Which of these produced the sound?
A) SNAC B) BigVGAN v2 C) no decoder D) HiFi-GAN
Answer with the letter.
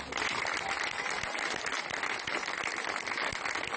C